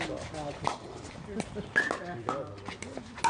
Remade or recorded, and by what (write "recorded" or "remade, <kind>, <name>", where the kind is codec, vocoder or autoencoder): recorded